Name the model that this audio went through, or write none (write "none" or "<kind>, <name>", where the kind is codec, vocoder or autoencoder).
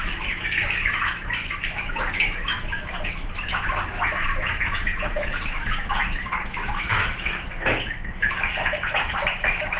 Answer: autoencoder, DAC-VAE